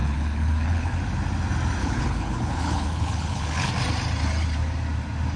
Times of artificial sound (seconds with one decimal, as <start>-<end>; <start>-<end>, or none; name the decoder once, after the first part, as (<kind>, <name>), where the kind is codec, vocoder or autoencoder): 0.0-1.0 (codec, HILCodec); 1.8-3.7